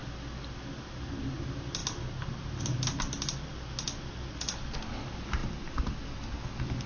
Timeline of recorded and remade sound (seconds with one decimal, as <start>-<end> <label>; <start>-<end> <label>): 0.0-6.9 recorded